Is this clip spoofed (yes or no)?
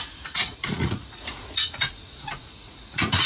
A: yes